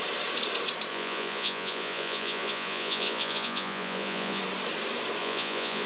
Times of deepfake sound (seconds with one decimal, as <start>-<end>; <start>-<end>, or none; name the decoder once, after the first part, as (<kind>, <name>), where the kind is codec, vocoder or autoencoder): 0.9-4.4 (vocoder, Vocos); 5.2-5.9